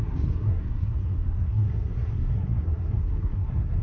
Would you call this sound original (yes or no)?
no